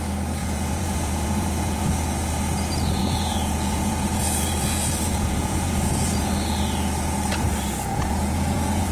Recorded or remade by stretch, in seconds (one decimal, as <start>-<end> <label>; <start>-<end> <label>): 0.0-0.4 recorded; 0.4-1.8 remade; 1.8-3.0 recorded; 3.0-6.2 remade; 6.2-7.9 recorded; 7.9-8.9 remade